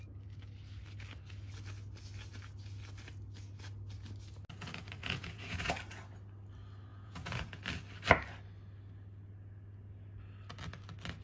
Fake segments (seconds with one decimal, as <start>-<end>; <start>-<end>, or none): 5.0-5.7; 6.9-7.6